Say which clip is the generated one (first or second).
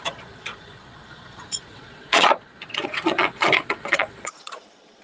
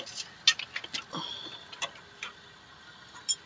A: first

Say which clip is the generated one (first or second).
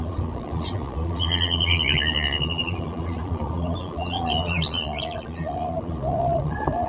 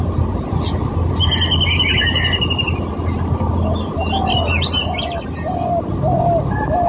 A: first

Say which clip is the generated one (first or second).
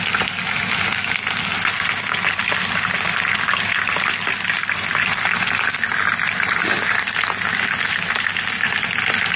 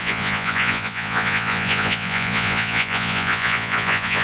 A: second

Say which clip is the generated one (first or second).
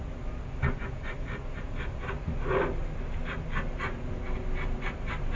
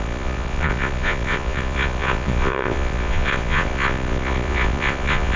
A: second